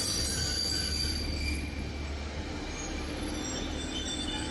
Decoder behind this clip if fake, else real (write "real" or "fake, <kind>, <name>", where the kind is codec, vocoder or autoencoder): real